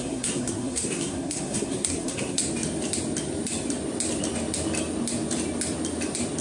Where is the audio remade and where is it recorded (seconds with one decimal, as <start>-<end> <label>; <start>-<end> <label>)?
0.0-2.4 remade; 2.4-6.4 recorded